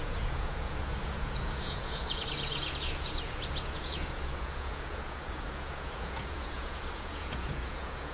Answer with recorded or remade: remade